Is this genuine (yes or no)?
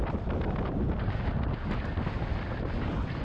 yes